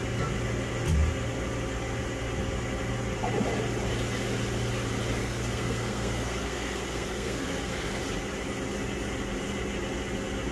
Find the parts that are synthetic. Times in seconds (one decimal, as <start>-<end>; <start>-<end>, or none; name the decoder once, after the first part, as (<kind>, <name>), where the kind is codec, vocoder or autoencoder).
5.2-8.0 (codec, SNAC)